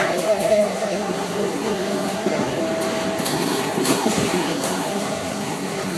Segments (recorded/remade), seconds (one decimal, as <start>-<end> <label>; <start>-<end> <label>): 0.0-2.6 remade; 2.6-3.2 recorded; 3.2-6.0 remade